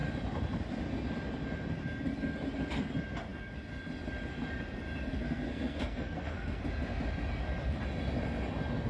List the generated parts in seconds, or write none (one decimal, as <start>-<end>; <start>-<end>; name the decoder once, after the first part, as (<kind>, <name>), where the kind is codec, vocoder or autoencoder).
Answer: 5.1-6.6 (codec, SNAC)